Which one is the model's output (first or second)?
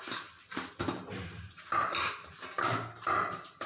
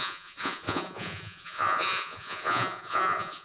second